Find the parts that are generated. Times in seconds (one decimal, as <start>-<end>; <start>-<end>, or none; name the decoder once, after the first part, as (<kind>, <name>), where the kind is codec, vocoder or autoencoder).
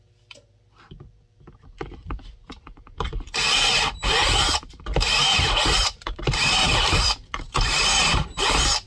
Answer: 5.2-8.9 (vocoder, BigVGAN v2)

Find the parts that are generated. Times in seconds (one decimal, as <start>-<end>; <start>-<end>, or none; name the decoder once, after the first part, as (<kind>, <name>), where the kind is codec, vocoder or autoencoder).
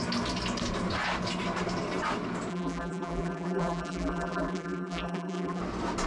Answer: 2.5-5.6 (vocoder, BigVGAN v2)